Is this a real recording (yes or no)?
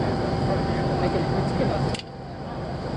no